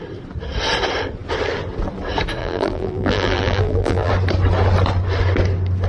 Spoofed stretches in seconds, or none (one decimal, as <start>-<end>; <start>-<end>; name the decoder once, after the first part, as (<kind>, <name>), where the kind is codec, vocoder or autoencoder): 2.4-4.1 (vocoder, BigVGAN v2)